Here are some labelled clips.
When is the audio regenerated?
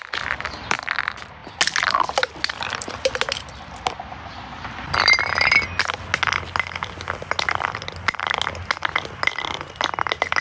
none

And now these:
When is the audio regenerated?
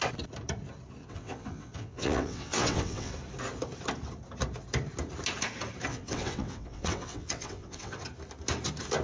1.0-3.1 (vocoder, WaveNeXt); 5.9-8.0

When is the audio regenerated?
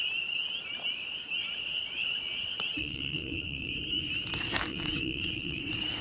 1.4-3.7 (vocoder, WaveNeXt); 4.7-5.6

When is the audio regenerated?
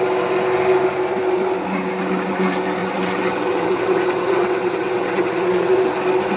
2.8-5.7 (vocoder, WaveNeXt)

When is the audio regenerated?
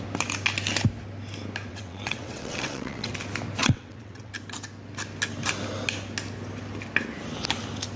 1.7-3.1 (vocoder, WaveNeXt); 3.6-4.3